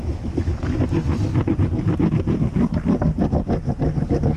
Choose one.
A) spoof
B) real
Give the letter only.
B